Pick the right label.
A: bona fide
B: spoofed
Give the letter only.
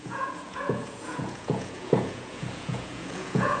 B